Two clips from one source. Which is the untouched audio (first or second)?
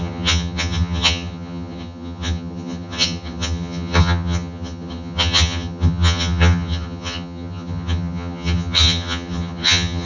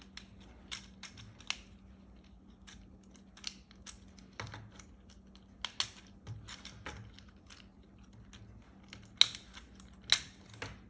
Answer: second